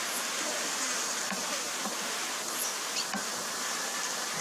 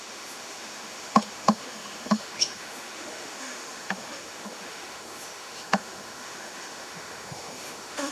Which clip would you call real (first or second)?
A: first